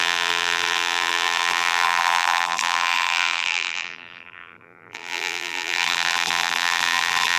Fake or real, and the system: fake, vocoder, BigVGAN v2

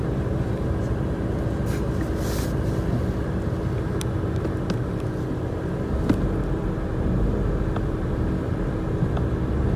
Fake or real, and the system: real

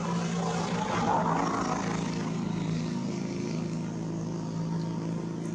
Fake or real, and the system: real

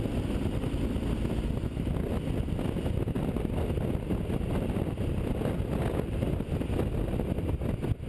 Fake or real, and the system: real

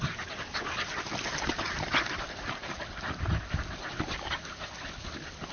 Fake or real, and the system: real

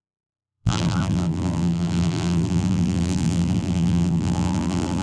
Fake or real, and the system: fake, vocoder, BigVGAN v2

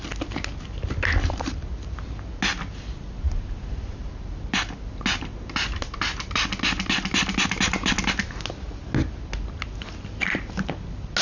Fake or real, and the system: real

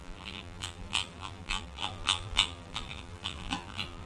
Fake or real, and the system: fake, vocoder, BigVGAN v2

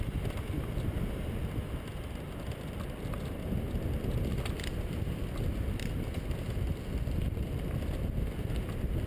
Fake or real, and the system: real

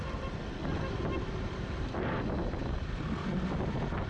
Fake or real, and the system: real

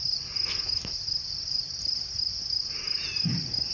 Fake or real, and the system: real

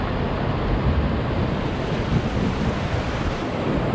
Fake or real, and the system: real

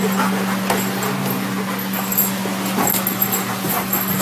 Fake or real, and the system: real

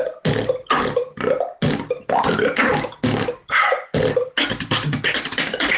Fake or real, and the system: real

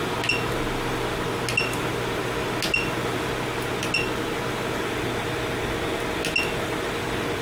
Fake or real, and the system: real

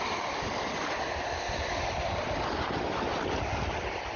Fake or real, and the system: real